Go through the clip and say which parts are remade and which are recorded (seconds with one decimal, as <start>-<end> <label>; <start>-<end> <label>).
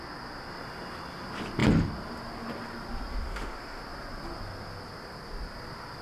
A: 0.0-3.1 recorded; 3.1-3.8 remade; 3.8-6.0 recorded